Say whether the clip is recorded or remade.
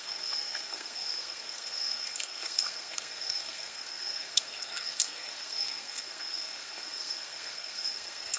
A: remade